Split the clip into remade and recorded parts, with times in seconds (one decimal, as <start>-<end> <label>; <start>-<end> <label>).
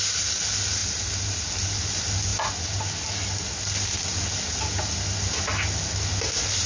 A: 0.0-6.7 recorded